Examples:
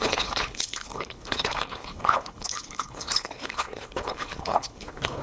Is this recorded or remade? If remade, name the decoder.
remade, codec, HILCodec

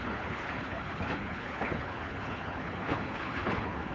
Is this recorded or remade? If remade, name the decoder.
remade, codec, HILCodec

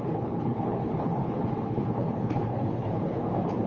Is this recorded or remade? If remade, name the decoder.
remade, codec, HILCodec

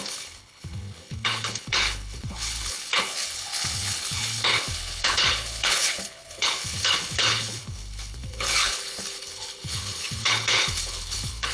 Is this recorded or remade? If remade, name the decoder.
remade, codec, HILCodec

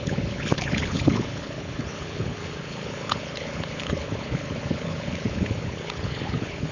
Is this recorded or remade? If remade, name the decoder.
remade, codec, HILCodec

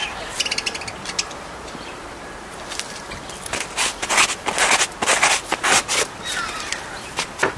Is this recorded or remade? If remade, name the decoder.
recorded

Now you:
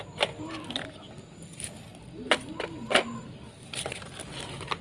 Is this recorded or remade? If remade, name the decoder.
recorded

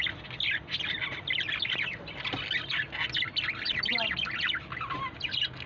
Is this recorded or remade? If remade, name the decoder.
recorded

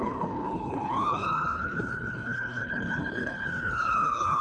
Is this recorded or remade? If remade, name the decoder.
remade, codec, HILCodec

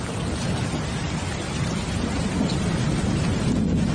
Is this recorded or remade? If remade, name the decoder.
recorded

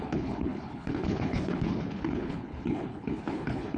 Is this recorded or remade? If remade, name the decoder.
remade, codec, HILCodec